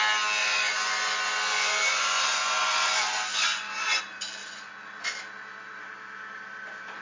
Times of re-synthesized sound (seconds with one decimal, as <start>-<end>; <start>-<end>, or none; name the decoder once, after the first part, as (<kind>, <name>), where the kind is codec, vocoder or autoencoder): 0.4-4.0 (vocoder, Vocos); 4.4-5.2

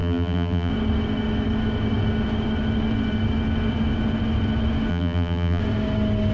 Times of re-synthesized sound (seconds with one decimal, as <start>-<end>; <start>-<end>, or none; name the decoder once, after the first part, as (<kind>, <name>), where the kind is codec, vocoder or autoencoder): 0.0-0.7 (vocoder, BigVGAN v2); 4.9-5.6